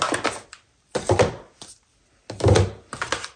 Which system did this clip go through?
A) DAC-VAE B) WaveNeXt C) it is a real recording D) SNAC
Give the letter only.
C